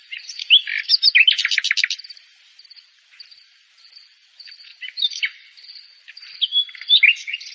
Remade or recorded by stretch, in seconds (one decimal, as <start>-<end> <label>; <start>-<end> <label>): 0.0-7.5 recorded